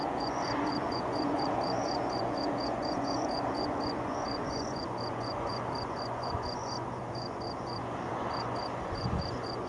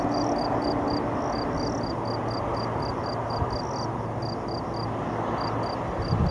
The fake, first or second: first